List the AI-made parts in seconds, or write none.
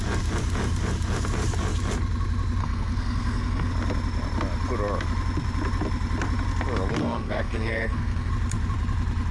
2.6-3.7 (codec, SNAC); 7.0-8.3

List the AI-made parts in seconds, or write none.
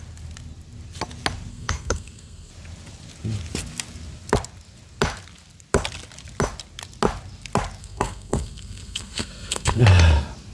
1.5-2.5 (codec, SNAC); 7.8-9.8